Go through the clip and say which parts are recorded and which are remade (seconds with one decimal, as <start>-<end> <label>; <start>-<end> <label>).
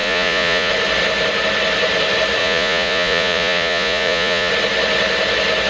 0.0-0.7 remade; 0.7-2.4 recorded; 2.4-4.5 remade; 4.5-5.7 recorded